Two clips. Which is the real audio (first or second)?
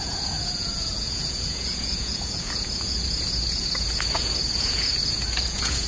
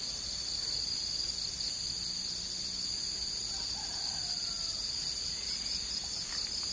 second